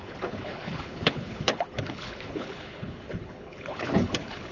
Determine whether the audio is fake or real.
fake